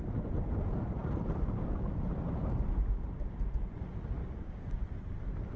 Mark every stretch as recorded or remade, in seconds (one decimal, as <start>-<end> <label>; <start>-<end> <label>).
0.0-4.2 recorded; 4.2-4.8 remade; 4.8-5.6 recorded